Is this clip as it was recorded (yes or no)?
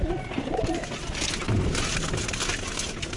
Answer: yes